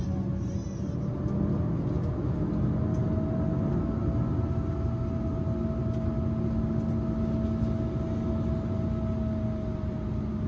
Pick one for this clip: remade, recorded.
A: recorded